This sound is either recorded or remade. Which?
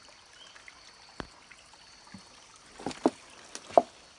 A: recorded